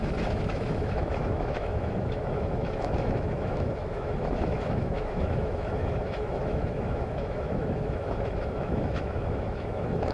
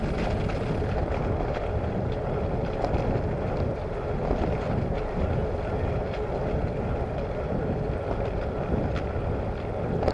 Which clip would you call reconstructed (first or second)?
first